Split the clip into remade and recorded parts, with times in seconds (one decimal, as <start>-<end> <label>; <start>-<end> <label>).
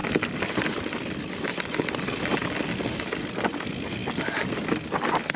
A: 0.0-5.4 recorded